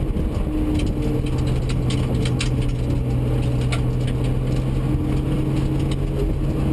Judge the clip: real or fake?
real